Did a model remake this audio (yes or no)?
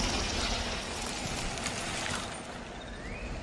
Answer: no